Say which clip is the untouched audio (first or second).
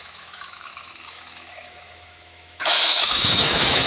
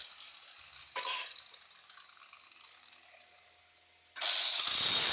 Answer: second